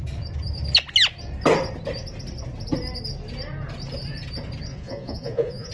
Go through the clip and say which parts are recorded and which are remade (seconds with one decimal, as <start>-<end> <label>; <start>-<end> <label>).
0.0-4.7 recorded; 4.7-5.7 remade